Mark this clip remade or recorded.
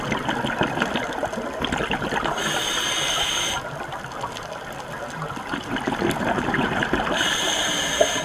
recorded